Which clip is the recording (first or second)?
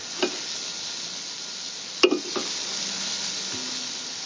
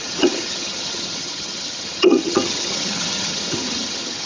first